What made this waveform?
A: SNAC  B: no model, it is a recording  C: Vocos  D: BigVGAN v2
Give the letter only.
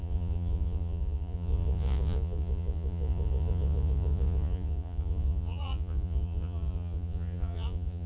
C